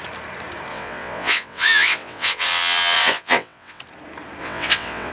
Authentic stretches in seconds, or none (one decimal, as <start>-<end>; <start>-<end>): 0.0-0.7; 3.8-4.4